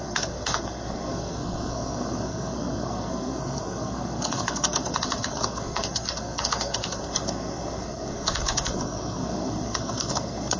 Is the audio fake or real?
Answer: fake